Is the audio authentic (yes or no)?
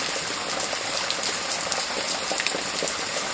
yes